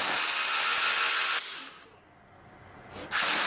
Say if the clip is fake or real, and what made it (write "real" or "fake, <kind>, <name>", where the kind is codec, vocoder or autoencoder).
real